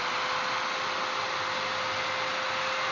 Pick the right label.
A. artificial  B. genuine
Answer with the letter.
B